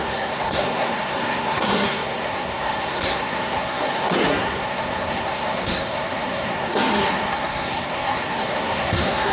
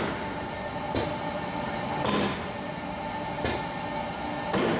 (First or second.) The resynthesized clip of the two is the first